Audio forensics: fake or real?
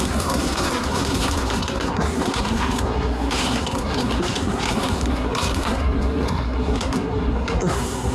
fake